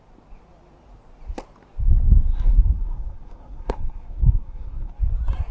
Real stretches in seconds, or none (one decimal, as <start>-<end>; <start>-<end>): 0.0-2.3; 5.0-5.5